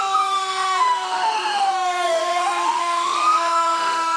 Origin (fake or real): fake